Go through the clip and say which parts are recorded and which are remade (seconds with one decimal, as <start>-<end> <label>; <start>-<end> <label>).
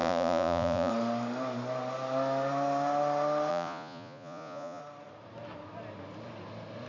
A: 0.0-0.9 remade; 0.9-3.5 recorded; 3.5-4.8 remade; 4.8-6.9 recorded